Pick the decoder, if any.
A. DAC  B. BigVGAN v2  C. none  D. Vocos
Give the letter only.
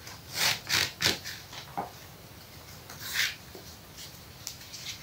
C